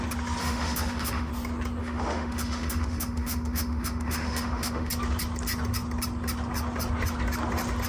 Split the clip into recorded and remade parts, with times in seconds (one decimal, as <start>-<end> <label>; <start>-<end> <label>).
0.0-0.4 recorded; 0.4-1.3 remade; 1.3-1.8 recorded; 1.8-4.9 remade; 4.9-7.9 recorded

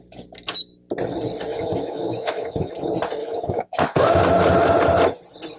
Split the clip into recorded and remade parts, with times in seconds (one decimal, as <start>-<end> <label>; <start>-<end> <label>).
0.0-1.5 recorded; 1.5-2.7 remade; 2.7-3.2 recorded; 3.2-4.2 remade; 4.2-5.6 recorded

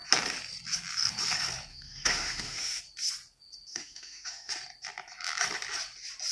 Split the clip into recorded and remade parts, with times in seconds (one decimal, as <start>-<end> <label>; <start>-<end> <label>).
0.0-1.7 recorded; 1.7-2.8 remade; 2.8-3.7 recorded; 3.7-4.5 remade; 4.5-6.3 recorded

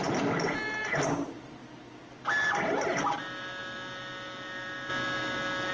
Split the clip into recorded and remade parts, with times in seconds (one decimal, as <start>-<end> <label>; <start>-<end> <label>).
0.0-5.7 recorded